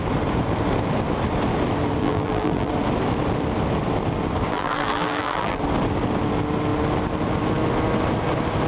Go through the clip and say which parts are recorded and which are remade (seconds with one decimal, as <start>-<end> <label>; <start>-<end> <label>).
0.0-2.0 recorded; 2.0-2.7 remade; 2.7-4.5 recorded; 4.5-5.6 remade; 5.6-8.7 recorded